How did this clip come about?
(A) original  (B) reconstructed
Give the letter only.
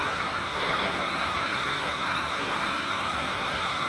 B